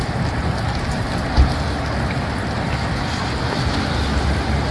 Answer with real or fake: real